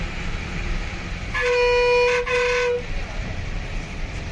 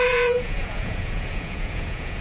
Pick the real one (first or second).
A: first